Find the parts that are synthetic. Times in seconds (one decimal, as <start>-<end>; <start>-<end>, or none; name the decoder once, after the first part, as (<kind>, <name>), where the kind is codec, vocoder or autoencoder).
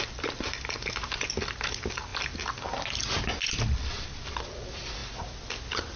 none